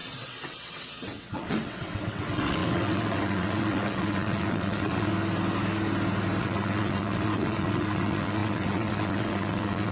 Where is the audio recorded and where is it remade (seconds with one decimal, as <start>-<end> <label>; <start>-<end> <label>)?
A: 0.0-5.1 remade; 5.1-6.4 recorded; 6.4-9.9 remade